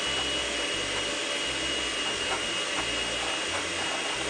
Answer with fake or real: real